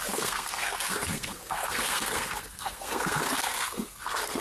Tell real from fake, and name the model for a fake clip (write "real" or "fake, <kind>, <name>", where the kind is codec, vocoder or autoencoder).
fake, codec, SNAC